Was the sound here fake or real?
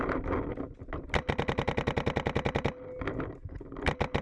real